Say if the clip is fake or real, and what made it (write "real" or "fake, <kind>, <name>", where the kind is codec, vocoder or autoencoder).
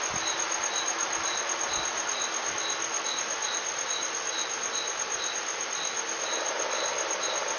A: real